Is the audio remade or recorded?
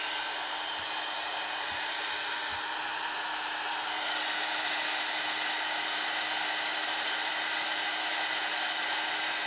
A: recorded